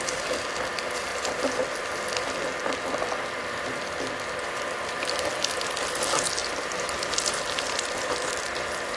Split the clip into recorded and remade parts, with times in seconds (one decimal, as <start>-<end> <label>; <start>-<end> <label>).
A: 0.0-3.4 recorded; 3.4-4.6 remade; 4.6-6.4 recorded; 6.4-8.1 remade; 8.1-9.0 recorded